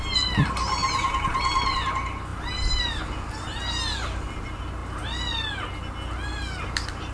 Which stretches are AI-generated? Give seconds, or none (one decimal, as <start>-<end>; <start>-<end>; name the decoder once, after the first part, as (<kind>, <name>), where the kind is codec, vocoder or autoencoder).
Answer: none